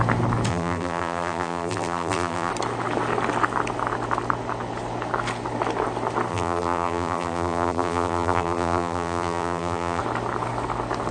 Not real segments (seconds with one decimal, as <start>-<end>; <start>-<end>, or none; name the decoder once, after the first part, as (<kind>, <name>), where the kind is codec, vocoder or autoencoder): 0.5-2.5 (vocoder, BigVGAN v2); 6.3-10.0